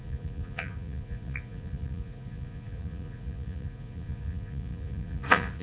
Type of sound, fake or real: fake